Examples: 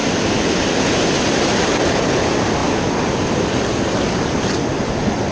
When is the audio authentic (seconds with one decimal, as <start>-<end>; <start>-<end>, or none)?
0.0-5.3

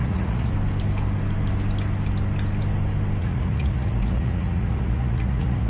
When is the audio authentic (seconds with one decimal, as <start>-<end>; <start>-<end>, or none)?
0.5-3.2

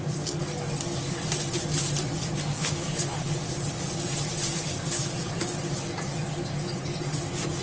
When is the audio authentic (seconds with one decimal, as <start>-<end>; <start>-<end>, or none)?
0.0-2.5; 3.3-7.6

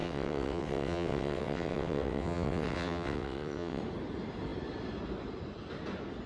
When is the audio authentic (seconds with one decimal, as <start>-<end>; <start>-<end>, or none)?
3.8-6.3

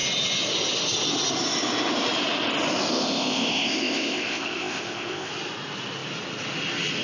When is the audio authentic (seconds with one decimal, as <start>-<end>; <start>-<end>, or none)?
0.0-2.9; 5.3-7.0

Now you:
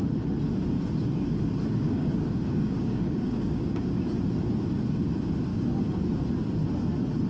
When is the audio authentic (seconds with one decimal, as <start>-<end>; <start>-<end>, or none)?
0.0-1.7; 3.8-5.5; 6.1-7.3